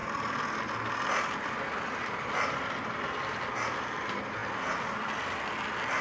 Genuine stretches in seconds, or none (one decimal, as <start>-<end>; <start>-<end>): 0.0-6.0